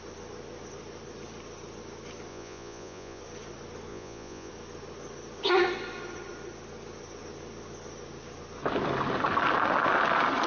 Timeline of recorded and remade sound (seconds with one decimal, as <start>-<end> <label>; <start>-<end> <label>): 0.0-2.3 recorded; 2.3-3.2 remade; 3.2-3.9 recorded; 3.9-4.5 remade; 4.5-10.5 recorded